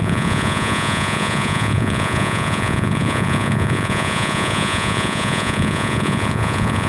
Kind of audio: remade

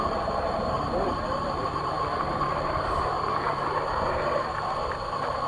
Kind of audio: remade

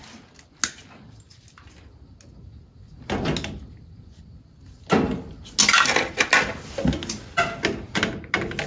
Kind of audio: recorded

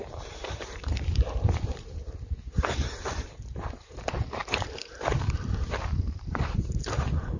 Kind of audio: remade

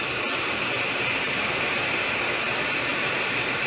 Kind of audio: remade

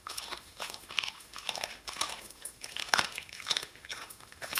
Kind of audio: remade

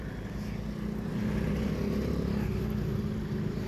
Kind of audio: recorded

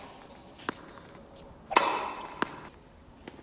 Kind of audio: recorded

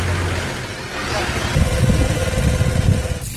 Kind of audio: recorded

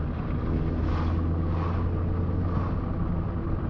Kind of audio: recorded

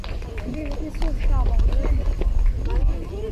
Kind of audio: recorded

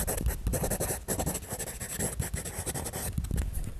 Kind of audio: recorded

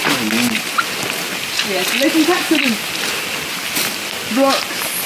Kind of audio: recorded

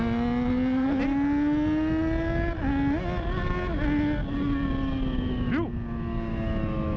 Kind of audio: recorded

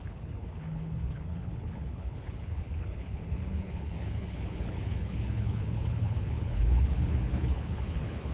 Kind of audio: remade